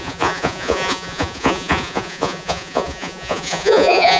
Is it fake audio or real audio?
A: fake